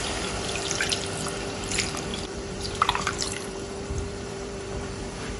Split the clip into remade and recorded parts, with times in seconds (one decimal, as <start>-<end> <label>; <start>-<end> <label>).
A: 0.0-2.1 recorded; 2.1-5.4 remade